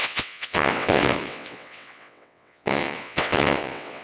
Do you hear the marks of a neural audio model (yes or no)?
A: yes